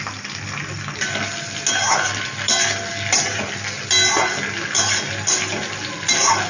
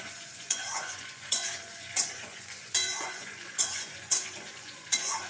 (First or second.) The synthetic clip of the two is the second